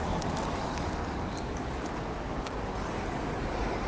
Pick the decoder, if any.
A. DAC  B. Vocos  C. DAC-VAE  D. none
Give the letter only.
A